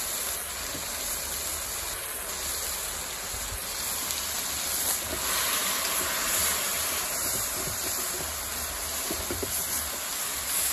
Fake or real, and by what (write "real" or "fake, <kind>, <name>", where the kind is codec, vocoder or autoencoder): real